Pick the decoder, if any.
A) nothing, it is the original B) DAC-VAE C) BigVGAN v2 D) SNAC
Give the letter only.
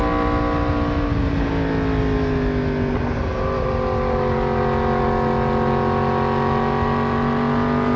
A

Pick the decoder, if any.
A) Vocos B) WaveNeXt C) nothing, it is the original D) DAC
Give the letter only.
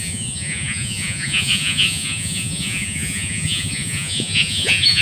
A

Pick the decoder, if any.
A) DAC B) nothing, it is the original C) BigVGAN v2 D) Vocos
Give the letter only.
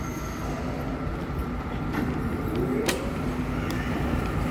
B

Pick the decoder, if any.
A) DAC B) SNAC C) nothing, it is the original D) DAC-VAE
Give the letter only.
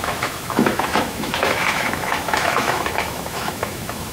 D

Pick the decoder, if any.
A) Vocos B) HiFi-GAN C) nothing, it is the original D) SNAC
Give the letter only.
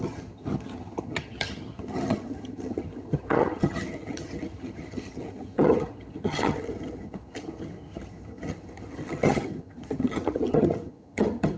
B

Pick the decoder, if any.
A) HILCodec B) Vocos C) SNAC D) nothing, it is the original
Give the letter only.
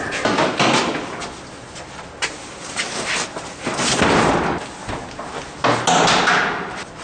D